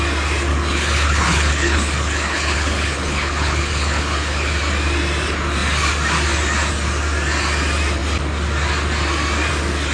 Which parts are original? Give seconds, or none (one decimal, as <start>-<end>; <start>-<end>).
0.0-0.5; 4.5-9.9